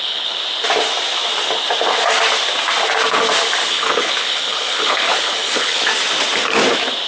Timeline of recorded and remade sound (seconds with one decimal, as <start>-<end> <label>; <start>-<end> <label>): 0.0-0.4 remade; 0.4-3.7 recorded; 3.7-5.9 remade; 5.9-7.1 recorded